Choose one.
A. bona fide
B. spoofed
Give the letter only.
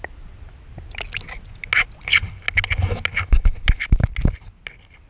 A